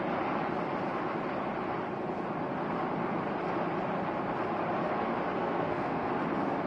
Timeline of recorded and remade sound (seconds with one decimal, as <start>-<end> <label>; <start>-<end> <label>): 0.0-5.4 recorded; 5.4-6.1 remade; 6.1-6.7 recorded